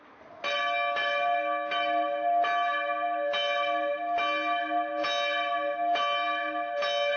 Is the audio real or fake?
real